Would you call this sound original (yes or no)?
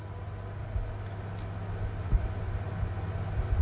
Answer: yes